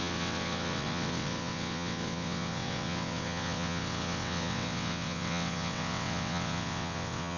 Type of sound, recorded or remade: remade